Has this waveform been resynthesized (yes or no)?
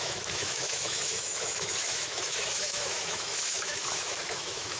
yes